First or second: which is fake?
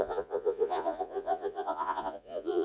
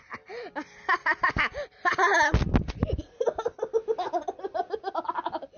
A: first